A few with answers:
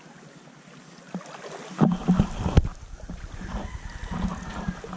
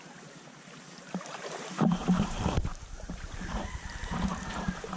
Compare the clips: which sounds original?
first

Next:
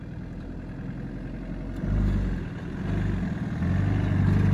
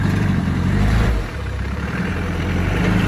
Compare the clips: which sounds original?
first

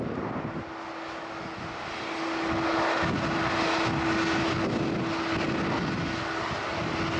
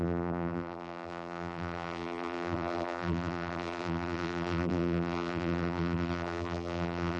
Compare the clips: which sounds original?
first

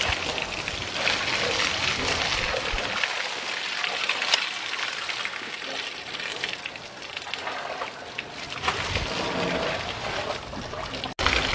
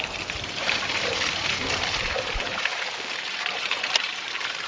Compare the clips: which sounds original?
first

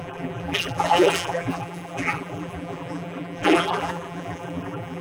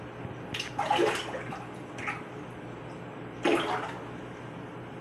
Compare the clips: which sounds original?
second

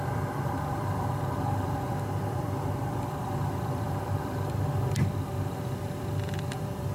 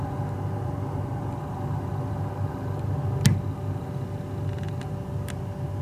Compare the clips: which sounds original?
second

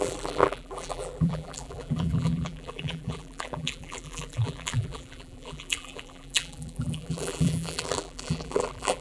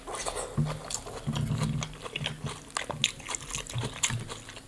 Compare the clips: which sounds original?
second